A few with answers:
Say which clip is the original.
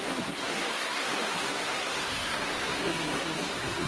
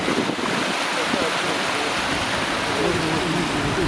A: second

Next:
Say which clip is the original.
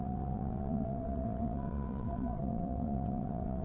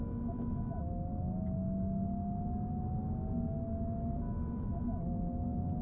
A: second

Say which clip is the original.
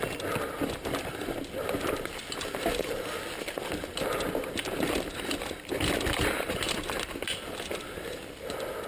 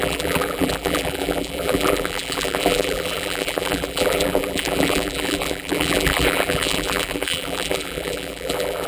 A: first